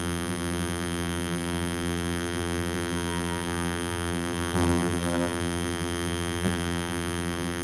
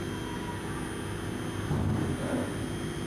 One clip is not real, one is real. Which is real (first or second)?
second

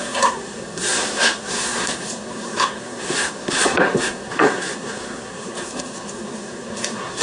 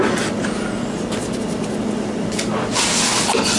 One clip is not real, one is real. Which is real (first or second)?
second